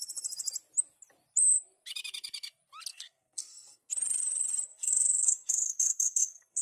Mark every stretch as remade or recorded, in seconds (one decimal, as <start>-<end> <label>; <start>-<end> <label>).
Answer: 0.0-2.9 recorded; 2.9-3.9 remade; 3.9-4.7 recorded; 4.7-6.6 remade